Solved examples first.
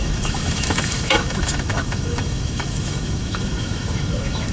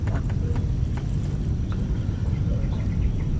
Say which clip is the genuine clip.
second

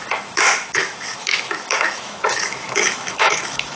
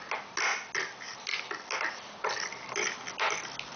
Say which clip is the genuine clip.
second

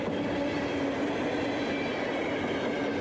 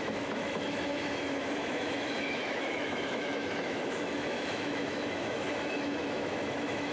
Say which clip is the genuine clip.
first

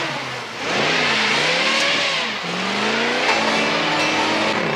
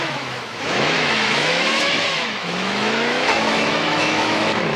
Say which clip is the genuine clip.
first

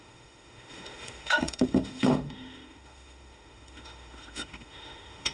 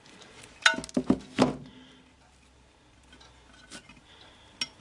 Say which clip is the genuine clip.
second